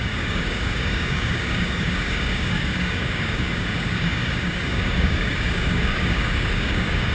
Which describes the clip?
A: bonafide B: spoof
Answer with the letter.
B